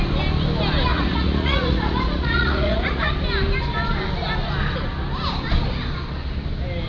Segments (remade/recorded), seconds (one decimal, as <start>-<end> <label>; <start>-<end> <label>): 0.0-0.9 recorded; 0.9-3.1 remade; 3.1-6.9 recorded